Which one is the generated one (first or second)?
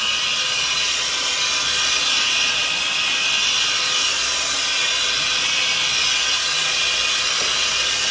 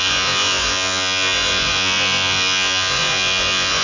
second